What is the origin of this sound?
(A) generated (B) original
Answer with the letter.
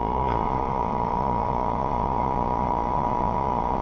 A